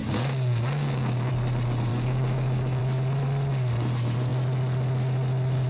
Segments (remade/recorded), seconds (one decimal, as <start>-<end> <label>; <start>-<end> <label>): 0.0-1.3 remade; 1.3-1.9 recorded; 1.9-2.8 remade; 2.8-5.7 recorded